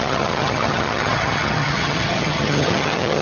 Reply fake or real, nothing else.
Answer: fake